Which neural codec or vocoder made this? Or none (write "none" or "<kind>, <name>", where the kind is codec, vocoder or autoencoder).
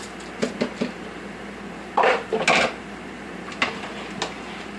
none